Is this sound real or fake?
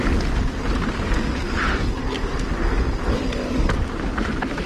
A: real